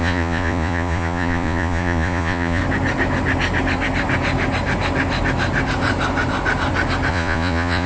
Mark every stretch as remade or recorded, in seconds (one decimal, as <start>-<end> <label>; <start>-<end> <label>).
0.0-2.6 remade; 2.6-7.1 recorded; 7.1-7.9 remade